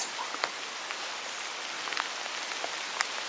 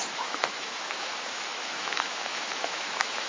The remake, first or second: second